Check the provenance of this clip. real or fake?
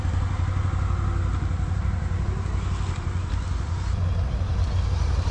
real